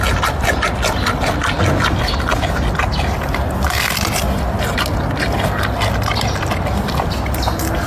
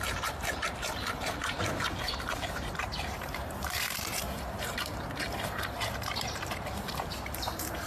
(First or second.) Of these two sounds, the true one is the first